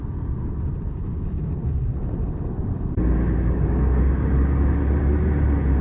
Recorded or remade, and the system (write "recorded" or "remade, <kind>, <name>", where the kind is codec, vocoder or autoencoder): recorded